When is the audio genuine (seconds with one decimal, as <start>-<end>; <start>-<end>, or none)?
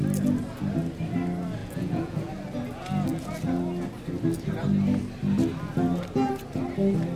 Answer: 0.0-1.6; 2.3-7.2